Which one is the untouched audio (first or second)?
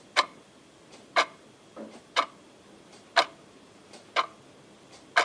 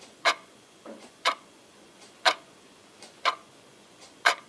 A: first